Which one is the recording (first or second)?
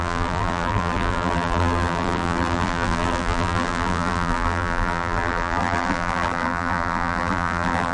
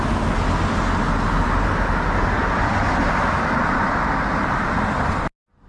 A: second